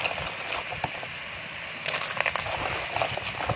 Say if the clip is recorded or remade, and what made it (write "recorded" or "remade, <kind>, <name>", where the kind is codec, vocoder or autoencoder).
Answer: recorded